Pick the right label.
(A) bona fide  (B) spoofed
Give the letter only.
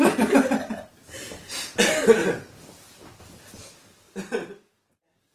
A